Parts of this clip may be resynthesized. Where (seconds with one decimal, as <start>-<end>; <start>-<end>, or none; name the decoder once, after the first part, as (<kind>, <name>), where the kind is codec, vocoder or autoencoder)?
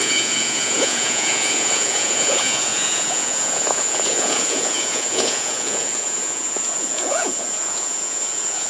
0.0-8.7 (vocoder, Vocos)